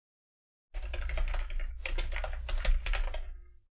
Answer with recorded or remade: recorded